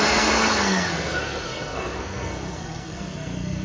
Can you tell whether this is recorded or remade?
remade